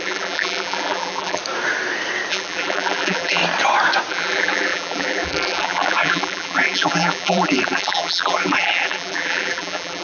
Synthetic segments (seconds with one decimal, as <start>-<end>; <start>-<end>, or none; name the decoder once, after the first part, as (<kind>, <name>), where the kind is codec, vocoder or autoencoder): 0.0-1.4 (vocoder, BigVGAN v2); 2.3-3.4; 4.1-10.0